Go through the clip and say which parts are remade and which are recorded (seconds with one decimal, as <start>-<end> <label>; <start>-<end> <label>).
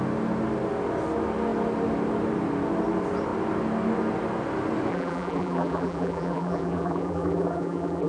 0.0-4.9 recorded; 4.9-8.1 remade